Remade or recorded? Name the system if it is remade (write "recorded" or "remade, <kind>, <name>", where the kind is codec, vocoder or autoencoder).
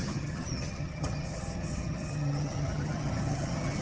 remade, vocoder, HiFi-GAN